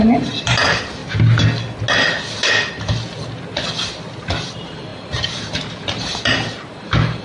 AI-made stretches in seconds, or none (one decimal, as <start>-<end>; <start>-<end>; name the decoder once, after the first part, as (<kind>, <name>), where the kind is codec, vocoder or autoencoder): 0.0-1.0 (vocoder, BigVGAN v2); 4.4-7.2